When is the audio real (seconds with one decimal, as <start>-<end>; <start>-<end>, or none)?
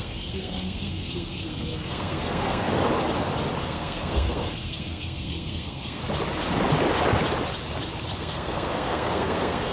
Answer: 2.8-3.6; 6.0-8.2